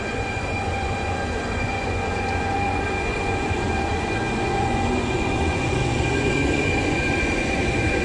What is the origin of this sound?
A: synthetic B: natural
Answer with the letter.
A